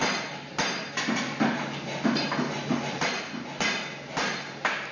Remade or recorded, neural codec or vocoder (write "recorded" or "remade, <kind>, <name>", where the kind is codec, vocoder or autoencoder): recorded